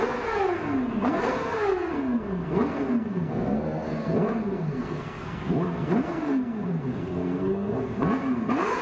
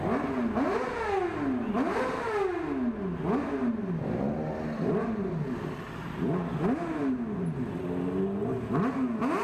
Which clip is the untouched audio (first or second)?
second